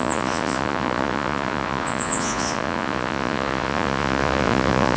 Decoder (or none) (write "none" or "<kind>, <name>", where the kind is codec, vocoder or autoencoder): vocoder, Vocos